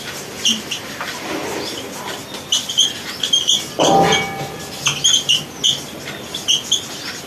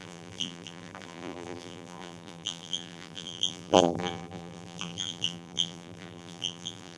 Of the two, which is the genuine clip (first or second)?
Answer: first